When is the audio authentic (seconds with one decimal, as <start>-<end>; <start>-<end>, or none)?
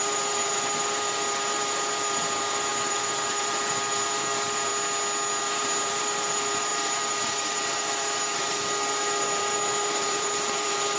4.7-5.4